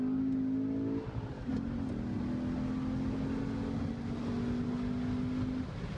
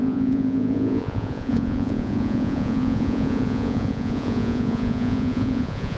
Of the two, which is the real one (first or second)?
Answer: first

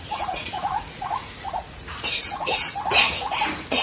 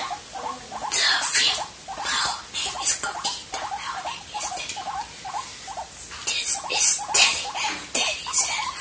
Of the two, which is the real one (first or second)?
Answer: second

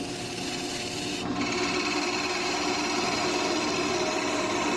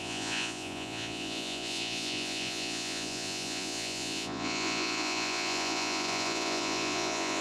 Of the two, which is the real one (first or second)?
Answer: first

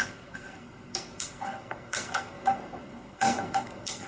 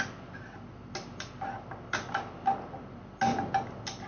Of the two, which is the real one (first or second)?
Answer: second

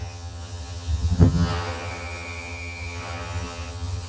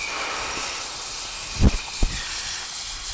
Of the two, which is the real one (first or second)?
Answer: second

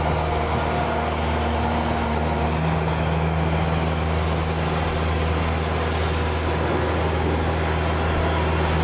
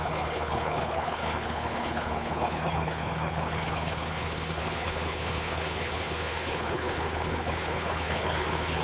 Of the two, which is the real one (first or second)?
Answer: first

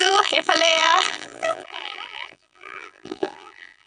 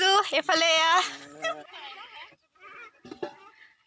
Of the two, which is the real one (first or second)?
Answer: second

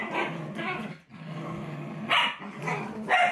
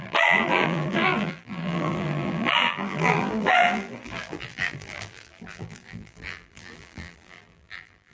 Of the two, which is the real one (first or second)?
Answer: first